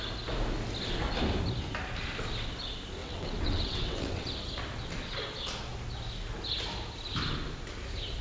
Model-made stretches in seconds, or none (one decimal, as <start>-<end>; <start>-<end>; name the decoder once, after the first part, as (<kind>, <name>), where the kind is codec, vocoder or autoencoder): 3.0-4.3 (vocoder, WaveNeXt)